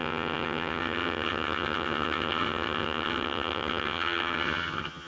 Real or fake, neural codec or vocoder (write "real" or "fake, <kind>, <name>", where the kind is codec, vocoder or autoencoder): fake, vocoder, HiFi-GAN